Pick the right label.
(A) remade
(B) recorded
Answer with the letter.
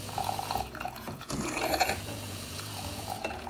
A